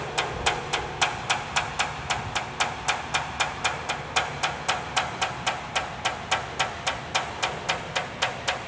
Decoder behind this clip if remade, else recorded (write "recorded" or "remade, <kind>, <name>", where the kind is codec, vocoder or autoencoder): recorded